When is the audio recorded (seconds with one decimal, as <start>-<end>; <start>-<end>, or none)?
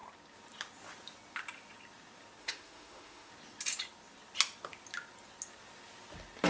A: 0.0-2.4; 3.3-6.5